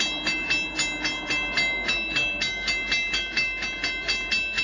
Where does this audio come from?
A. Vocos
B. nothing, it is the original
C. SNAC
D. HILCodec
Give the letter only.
B